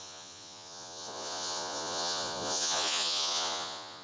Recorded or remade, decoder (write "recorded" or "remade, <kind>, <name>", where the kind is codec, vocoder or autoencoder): remade, vocoder, Vocos